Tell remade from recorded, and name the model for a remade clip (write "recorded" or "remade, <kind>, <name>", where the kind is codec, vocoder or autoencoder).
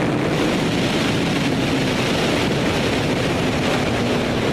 remade, vocoder, BigVGAN v2